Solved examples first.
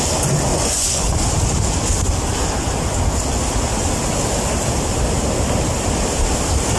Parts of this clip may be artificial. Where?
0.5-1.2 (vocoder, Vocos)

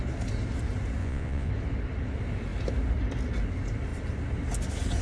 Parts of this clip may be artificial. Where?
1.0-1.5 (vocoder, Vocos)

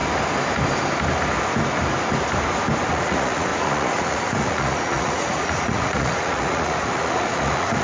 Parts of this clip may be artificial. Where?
2.9-7.8 (vocoder, Vocos)

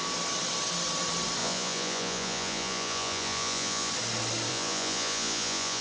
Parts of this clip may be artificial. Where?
1.4-3.9 (vocoder, Vocos); 4.5-5.8

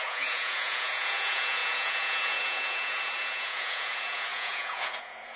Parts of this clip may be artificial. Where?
0.0-5.4 (vocoder, Vocos)